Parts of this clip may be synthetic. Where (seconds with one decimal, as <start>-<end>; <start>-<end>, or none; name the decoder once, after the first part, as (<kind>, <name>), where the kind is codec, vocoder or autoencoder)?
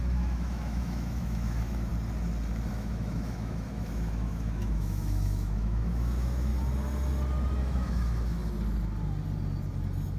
0.0-1.9 (autoencoder, DAC-VAE); 2.7-6.5; 7.6-8.4